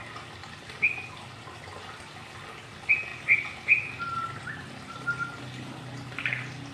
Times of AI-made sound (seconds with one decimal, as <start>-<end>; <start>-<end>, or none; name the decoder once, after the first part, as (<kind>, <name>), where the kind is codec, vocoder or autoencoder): none